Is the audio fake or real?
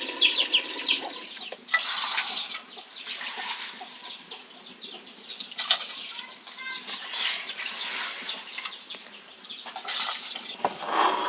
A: real